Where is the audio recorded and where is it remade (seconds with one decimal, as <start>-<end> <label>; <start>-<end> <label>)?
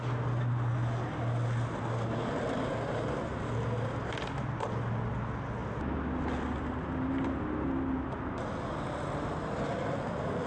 0.0-10.5 recorded